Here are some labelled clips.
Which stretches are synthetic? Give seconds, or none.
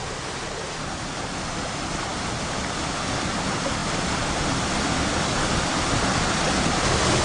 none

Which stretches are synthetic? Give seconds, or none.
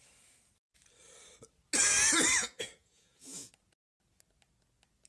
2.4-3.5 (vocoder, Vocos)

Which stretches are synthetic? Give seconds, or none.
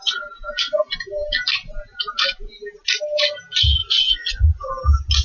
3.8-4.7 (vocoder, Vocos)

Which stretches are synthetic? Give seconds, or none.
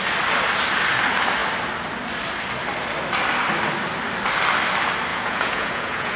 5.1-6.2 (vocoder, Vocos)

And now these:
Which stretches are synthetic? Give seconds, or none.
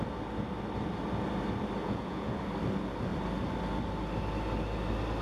1.8-2.3 (vocoder, Vocos)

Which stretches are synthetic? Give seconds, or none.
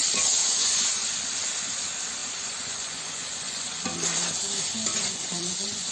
0.4-1.2 (vocoder, Vocos); 2.2-3.8; 5.0-5.9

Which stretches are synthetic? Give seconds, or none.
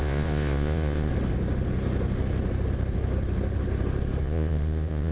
0.0-1.1 (vocoder, Vocos); 4.2-5.1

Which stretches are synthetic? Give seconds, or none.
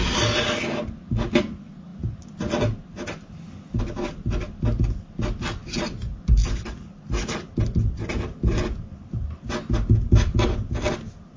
none